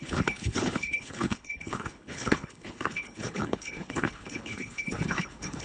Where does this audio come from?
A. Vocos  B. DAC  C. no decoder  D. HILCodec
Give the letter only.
D